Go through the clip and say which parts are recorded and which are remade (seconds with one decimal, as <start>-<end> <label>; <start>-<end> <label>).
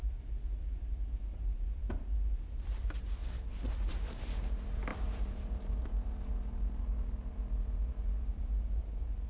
0.0-4.9 recorded; 4.9-6.7 remade; 6.7-9.3 recorded